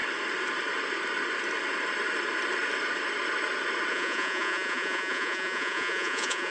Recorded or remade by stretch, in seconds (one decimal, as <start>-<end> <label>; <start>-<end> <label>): 0.0-3.9 recorded; 3.9-6.5 remade